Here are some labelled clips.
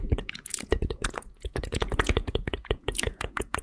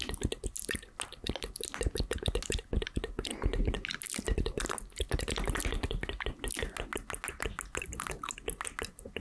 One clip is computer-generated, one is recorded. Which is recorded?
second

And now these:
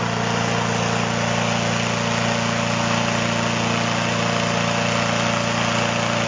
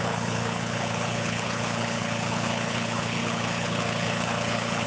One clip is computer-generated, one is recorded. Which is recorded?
first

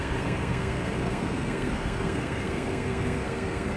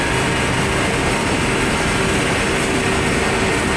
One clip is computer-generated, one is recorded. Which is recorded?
second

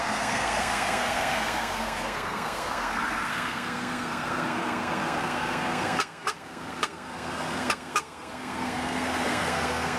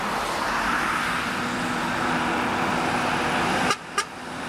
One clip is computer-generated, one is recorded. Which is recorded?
second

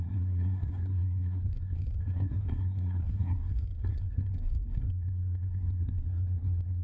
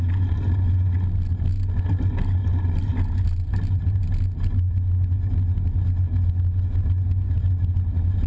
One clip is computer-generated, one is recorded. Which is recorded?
second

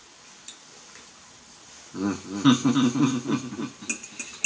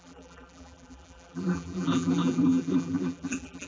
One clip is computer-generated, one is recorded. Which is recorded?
first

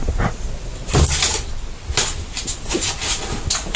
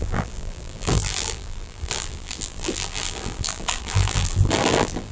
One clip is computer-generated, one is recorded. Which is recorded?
first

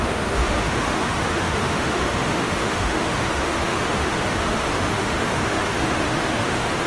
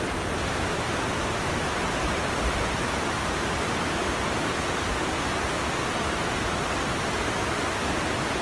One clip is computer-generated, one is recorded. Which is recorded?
second